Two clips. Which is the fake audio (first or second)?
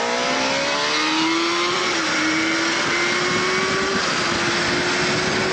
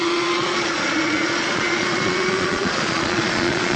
second